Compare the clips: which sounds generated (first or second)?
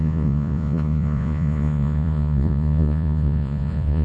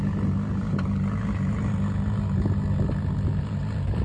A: first